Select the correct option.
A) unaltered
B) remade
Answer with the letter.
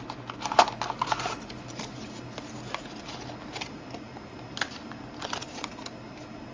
A